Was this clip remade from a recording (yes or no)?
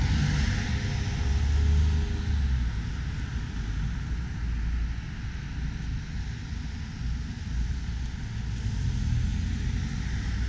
no